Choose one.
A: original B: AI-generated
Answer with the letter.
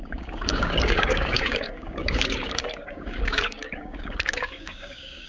B